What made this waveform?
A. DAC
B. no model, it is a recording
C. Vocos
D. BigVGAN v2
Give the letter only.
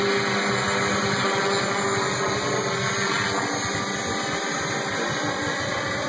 B